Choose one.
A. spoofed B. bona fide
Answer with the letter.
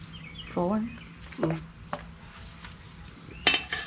B